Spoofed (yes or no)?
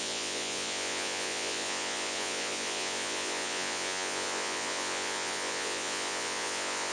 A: yes